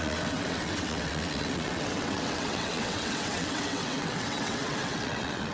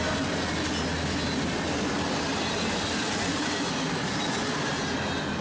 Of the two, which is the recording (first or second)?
second